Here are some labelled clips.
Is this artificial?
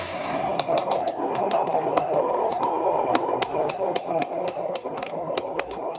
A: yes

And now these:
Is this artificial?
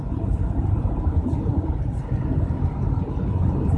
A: yes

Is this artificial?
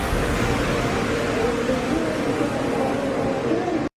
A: yes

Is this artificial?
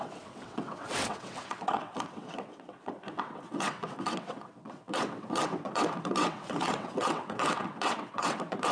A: yes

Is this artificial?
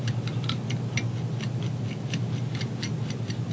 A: no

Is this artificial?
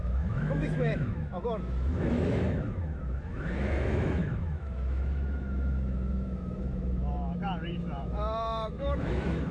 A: yes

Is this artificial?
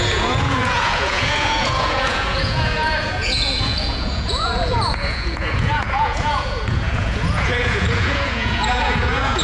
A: yes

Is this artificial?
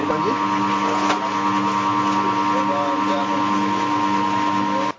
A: no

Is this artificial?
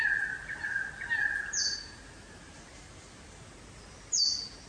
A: no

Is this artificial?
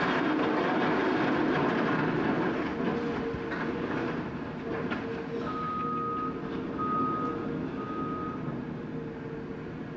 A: no